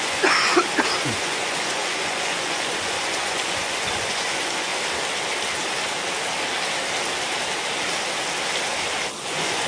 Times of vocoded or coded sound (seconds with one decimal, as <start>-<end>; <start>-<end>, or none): 0.0-0.5; 1.0-4.7; 9.2-9.7